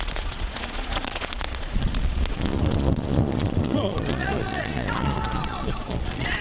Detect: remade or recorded remade